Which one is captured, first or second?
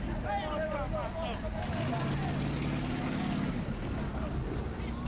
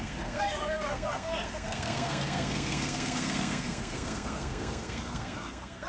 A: first